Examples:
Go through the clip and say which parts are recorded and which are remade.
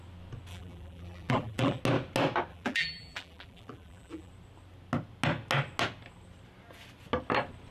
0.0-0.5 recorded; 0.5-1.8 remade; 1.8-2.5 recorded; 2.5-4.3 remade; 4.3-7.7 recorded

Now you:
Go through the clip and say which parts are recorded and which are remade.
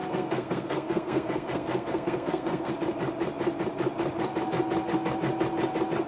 0.0-2.7 remade; 2.7-6.1 recorded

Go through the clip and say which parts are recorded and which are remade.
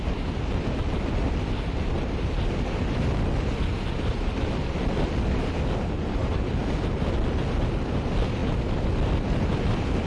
0.0-3.7 recorded; 3.7-4.3 remade; 4.3-6.2 recorded; 6.2-7.0 remade; 7.0-10.1 recorded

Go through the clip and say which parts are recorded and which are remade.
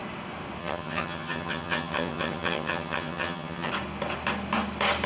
0.0-0.6 recorded; 0.6-3.7 remade; 3.7-5.1 recorded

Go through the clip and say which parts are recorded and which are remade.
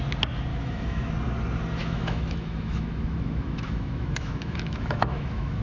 0.0-0.5 recorded; 0.5-1.1 remade; 1.1-1.8 recorded; 1.8-5.6 remade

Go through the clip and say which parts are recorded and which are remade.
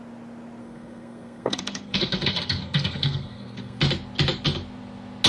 0.0-0.6 recorded; 0.6-3.8 remade; 3.8-5.3 recorded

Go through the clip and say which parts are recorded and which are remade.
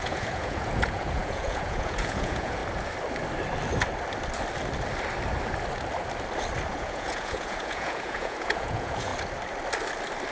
0.0-2.6 remade; 2.6-6.7 recorded; 6.7-9.1 remade; 9.1-10.3 recorded